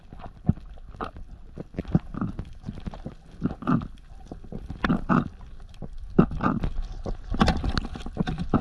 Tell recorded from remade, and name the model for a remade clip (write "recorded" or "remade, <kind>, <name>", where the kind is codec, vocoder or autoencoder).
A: recorded